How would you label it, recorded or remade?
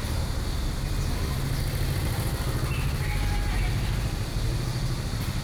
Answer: recorded